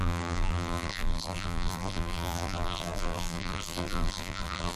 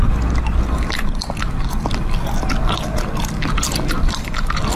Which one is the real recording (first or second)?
second